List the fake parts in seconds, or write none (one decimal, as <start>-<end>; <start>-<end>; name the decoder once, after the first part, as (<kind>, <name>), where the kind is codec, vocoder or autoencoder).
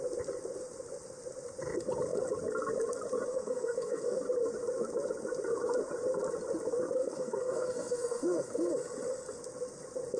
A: 3.3-4.2 (codec, SNAC); 7.0-8.7